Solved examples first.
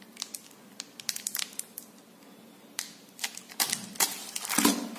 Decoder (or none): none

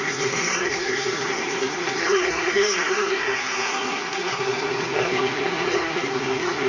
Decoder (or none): codec, SNAC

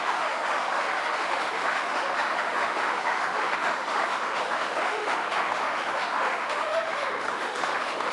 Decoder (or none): autoencoder, DAC-VAE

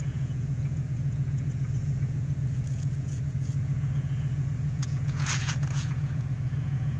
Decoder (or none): vocoder, Vocos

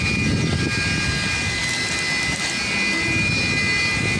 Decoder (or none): none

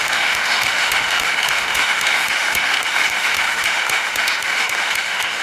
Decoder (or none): autoencoder, DAC-VAE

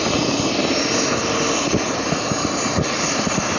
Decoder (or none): none